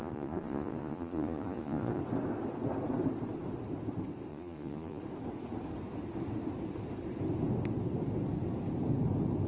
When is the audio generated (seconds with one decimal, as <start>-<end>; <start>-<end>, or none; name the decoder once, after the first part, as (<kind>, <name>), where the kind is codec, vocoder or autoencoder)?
0.0-2.0 (vocoder, Vocos); 4.3-5.0